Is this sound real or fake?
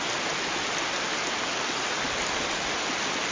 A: real